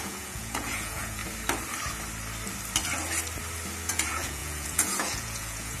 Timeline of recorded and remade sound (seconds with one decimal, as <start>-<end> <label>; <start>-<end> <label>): 0.0-1.2 remade; 1.2-3.9 recorded; 3.9-5.8 remade